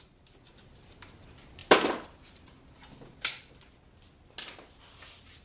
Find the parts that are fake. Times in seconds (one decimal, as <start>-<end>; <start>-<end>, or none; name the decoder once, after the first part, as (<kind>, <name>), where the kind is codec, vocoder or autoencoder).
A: none